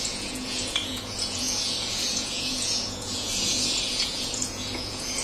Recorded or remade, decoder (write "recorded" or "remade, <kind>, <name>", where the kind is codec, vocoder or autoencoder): remade, vocoder, Vocos